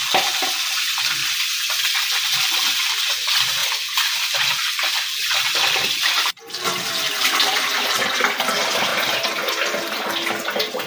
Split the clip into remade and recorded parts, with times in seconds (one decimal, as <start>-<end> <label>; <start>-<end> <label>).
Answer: 0.0-8.9 remade; 8.9-9.6 recorded; 9.6-10.9 remade